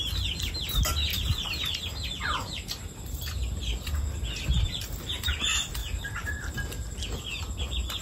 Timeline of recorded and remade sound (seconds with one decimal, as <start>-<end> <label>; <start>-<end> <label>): 0.0-1.1 recorded; 1.1-1.8 remade; 1.8-2.4 recorded; 2.4-3.3 remade; 3.3-5.8 recorded; 5.8-6.3 remade; 6.3-8.0 recorded